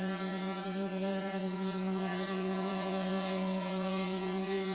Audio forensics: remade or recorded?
remade